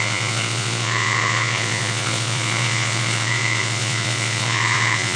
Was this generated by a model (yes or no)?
yes